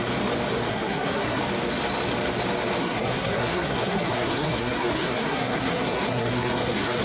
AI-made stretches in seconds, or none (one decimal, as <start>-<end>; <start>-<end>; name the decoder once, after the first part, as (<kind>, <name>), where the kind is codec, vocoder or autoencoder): 0.7-1.4 (codec, SNAC); 2.8-7.0